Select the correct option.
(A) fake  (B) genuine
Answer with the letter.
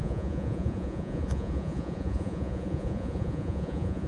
A